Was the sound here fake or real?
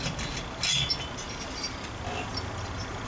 real